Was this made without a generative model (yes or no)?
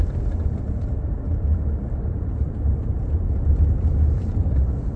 no